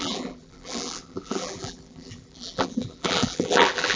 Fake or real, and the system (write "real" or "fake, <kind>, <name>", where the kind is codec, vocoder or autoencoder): fake, vocoder, BigVGAN v2